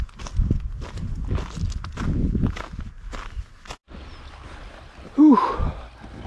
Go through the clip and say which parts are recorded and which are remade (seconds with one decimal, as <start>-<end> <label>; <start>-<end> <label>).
0.0-6.3 recorded